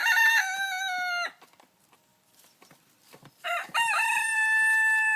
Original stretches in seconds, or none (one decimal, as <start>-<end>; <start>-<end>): 0.0-2.1

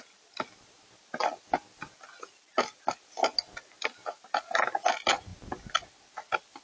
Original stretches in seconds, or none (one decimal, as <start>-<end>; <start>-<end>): 0.0-6.6

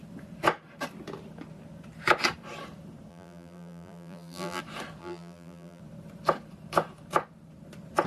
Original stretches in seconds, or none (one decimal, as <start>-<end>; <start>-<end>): 0.0-3.1; 4.6-5.0; 5.8-8.1

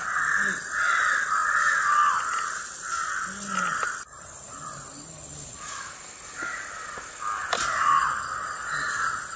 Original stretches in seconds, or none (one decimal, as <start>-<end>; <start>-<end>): 0.0-9.4

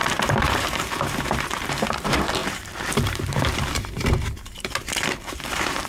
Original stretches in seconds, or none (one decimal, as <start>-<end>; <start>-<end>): none